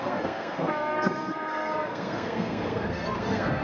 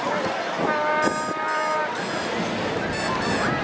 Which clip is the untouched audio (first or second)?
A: second